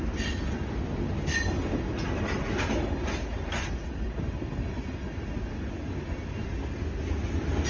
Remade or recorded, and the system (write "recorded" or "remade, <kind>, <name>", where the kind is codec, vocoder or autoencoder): recorded